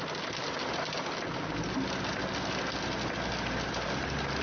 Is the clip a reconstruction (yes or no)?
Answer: no